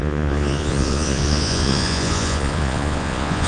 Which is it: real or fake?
fake